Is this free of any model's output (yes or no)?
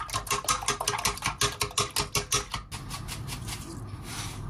yes